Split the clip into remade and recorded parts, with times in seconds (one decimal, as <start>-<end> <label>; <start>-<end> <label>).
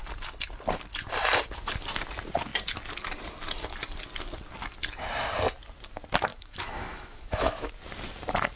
0.0-6.3 recorded; 6.3-7.7 remade; 7.7-8.6 recorded